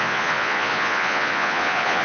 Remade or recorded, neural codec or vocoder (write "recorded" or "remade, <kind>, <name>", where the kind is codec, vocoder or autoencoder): remade, vocoder, Vocos